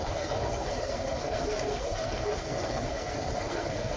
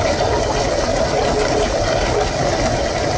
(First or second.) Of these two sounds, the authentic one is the second